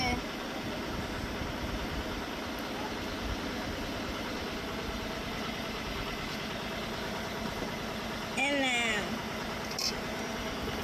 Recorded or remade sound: recorded